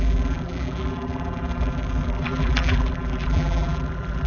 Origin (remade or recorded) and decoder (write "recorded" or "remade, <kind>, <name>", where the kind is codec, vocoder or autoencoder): remade, vocoder, BigVGAN v2